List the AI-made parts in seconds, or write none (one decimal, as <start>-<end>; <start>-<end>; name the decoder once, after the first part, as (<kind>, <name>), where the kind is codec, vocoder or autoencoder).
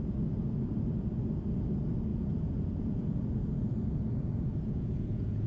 2.1-5.5 (vocoder, Vocos)